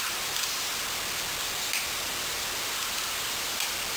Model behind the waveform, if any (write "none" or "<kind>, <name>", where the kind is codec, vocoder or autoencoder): none